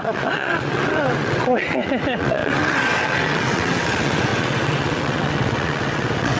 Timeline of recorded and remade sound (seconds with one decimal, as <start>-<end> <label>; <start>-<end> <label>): 0.0-6.4 remade